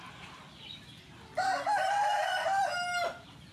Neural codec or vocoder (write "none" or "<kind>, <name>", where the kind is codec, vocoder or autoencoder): none